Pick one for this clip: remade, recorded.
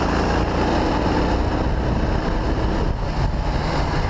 recorded